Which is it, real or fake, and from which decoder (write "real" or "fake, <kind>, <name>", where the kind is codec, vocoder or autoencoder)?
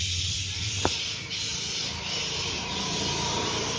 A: fake, vocoder, BigVGAN v2